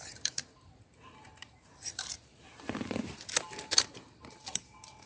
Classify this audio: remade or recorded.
remade